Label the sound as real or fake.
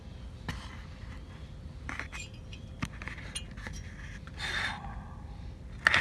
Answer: real